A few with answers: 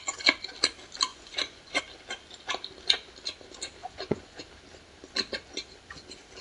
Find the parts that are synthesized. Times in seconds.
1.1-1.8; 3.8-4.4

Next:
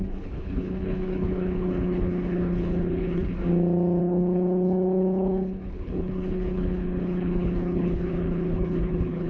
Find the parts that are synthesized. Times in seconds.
0.0-3.4; 4.0-9.3

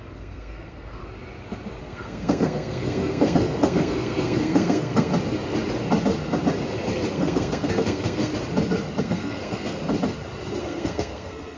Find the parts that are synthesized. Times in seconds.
0.0-1.0; 1.8-5.1; 7.1-8.3; 9.0-9.8; 10.6-11.6

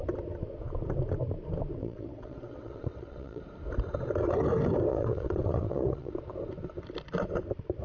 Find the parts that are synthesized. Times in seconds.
1.8-3.4; 4.9-6.1

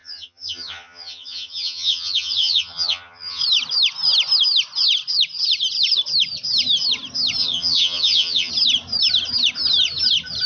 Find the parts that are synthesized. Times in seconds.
0.0-3.4; 7.4-8.5

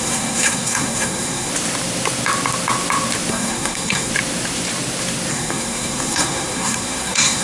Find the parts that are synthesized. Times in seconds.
0.0-1.5; 3.3-4.1; 5.3-7.4

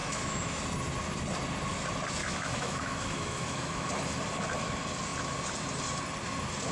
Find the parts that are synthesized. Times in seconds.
0.0-0.6; 2.2-3.9